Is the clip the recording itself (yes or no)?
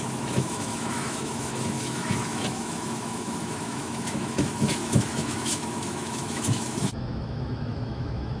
no